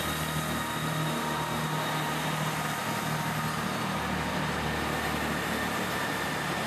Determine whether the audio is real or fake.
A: real